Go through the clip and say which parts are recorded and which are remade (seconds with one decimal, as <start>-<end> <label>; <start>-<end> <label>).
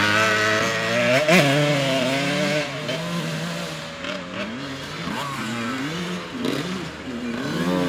0.0-7.9 recorded